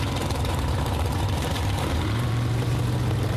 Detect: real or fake fake